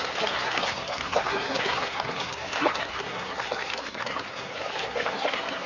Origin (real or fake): fake